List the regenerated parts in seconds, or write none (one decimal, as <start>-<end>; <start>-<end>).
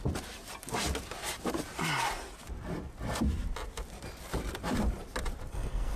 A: 5.5-6.0